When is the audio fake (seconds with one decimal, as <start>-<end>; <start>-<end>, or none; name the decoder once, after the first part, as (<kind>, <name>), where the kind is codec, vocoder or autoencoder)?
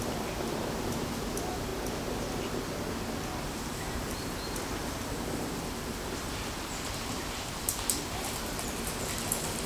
0.0-1.7 (vocoder, BigVGAN v2); 3.4-9.7